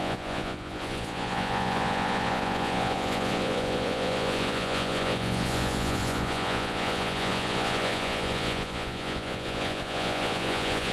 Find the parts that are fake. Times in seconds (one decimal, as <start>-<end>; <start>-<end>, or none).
0.0-10.9